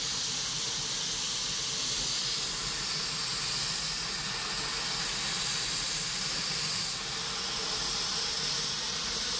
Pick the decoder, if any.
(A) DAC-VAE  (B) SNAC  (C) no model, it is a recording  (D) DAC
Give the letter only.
C